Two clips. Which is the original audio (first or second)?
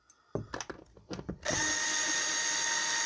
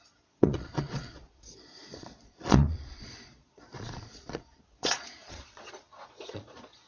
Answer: first